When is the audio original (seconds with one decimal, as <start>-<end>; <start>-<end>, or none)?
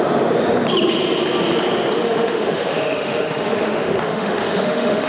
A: 0.0-2.0